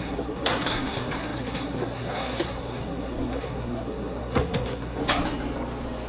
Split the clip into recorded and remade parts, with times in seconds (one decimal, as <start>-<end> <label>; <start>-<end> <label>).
0.0-5.0 remade; 5.0-6.1 recorded